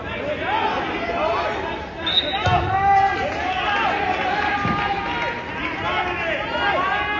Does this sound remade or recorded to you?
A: recorded